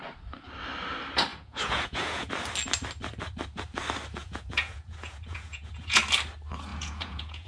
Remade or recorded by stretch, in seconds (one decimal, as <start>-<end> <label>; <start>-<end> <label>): 0.0-1.3 recorded; 1.3-2.3 remade; 2.3-4.2 recorded; 4.2-6.0 remade; 6.0-6.7 recorded; 6.7-7.5 remade